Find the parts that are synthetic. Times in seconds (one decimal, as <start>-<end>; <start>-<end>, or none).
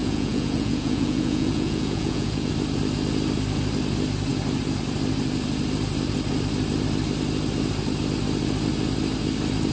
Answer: 0.0-2.5